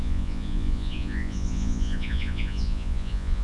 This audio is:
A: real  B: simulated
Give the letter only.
B